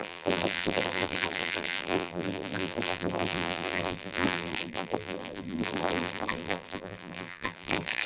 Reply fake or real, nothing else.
fake